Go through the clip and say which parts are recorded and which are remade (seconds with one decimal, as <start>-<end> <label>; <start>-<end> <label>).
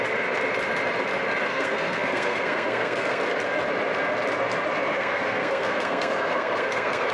0.0-1.5 recorded; 1.5-3.2 remade; 3.2-4.9 recorded; 4.9-7.1 remade